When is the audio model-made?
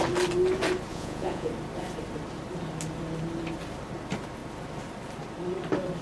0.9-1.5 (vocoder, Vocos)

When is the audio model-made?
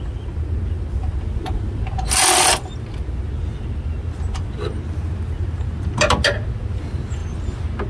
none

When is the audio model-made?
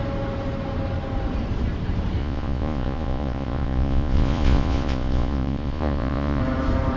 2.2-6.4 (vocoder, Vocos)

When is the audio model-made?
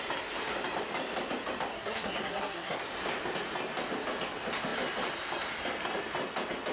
1.7-2.8 (codec, SNAC)